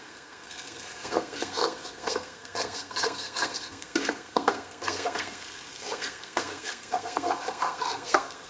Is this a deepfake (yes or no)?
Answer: yes